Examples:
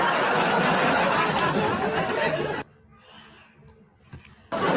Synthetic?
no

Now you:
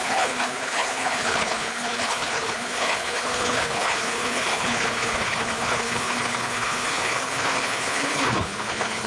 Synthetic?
yes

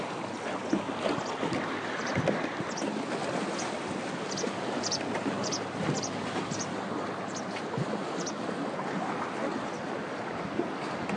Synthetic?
no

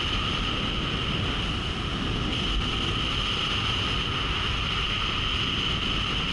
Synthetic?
no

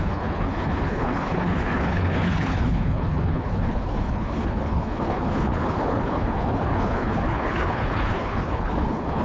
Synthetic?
yes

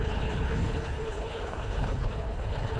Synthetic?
yes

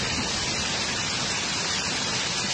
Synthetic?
no